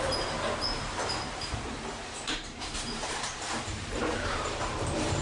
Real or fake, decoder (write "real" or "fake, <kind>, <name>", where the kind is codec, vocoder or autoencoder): fake, vocoder, BigVGAN v2